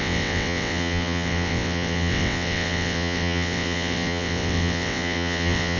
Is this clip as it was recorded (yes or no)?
no